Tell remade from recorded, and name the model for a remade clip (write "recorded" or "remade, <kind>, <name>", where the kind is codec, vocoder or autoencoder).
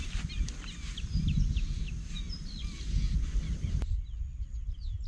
recorded